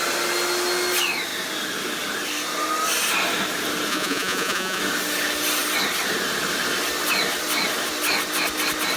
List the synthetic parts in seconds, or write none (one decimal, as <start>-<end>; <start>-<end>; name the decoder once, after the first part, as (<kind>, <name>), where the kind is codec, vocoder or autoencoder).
3.9-4.8 (vocoder, Vocos)